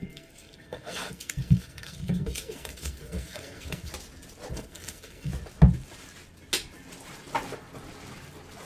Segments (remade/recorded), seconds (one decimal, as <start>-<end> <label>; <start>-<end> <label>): 0.0-3.9 remade; 3.9-4.5 recorded; 4.5-5.3 remade; 5.3-8.7 recorded